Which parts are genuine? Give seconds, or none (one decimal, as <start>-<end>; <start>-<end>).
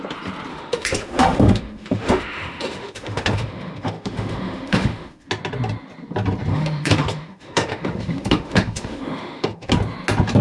0.0-0.5; 5.3-6.5; 9.7-10.4